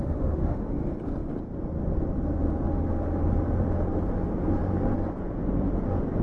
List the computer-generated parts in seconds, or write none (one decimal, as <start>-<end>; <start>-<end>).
0.0-0.7